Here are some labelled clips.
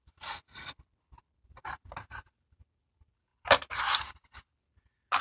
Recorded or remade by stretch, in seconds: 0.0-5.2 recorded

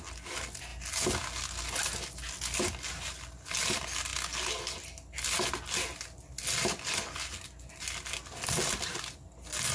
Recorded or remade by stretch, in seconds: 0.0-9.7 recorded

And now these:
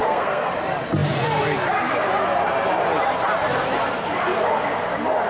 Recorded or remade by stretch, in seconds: 0.0-0.5 remade; 0.5-5.3 recorded

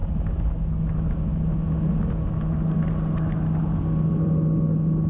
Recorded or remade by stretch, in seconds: 0.0-5.1 recorded

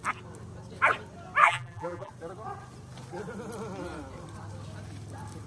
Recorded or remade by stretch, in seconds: 0.0-1.4 recorded; 1.4-2.1 remade; 2.1-5.5 recorded

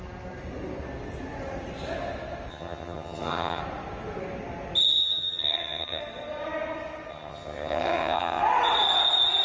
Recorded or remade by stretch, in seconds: 0.0-2.5 recorded; 2.5-3.6 remade; 3.6-5.0 recorded; 5.0-6.0 remade; 6.0-7.1 recorded; 7.1-8.4 remade; 8.4-9.4 recorded